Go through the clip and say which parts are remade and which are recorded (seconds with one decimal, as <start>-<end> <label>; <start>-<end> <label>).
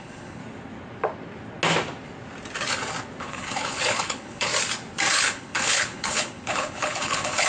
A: 0.0-0.4 remade; 0.4-3.2 recorded; 3.2-4.5 remade; 4.5-5.1 recorded; 5.1-7.5 remade